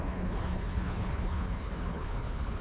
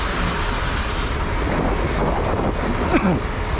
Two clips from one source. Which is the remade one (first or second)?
first